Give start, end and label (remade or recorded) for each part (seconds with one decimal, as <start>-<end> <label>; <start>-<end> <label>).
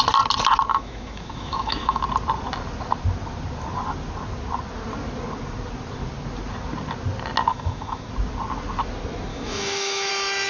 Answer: 0.0-0.7 recorded; 0.7-2.0 remade; 2.0-7.5 recorded; 7.5-8.1 remade; 8.1-9.3 recorded; 9.3-10.1 remade; 10.1-10.5 recorded